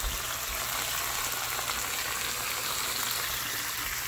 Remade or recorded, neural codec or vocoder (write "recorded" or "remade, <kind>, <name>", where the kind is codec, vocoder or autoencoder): recorded